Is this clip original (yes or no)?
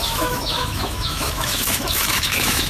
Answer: no